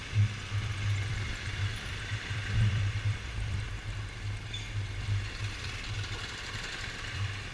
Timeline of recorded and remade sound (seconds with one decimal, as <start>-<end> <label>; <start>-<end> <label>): 0.0-1.1 recorded; 1.1-4.0 remade; 4.0-4.9 recorded; 4.9-7.5 remade